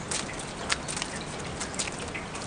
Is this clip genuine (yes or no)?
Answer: yes